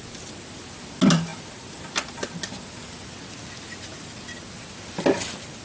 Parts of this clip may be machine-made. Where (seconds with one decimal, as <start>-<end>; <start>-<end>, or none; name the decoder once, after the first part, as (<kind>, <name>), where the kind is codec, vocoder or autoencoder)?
none